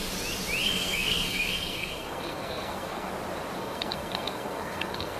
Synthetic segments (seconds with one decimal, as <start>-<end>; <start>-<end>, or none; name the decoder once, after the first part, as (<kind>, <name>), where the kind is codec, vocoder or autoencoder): 0.6-3.1 (codec, SNAC); 3.6-5.2